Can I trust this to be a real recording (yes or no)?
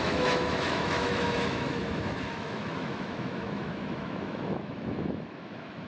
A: no